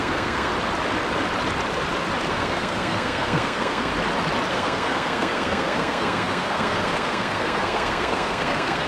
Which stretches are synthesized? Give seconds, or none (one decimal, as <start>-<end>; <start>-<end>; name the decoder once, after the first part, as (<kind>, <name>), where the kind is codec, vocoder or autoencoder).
0.0-0.5 (codec, SNAC); 2.3-3.9; 4.5-8.9